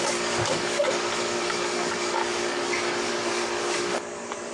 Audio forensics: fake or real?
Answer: fake